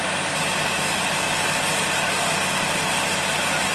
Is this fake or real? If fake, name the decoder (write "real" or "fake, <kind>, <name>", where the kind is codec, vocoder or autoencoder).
real